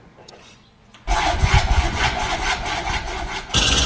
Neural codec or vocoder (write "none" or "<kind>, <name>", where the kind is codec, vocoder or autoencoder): vocoder, Vocos